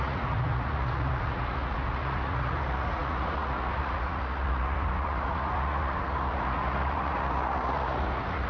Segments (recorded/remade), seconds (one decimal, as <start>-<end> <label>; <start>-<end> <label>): 0.0-8.5 remade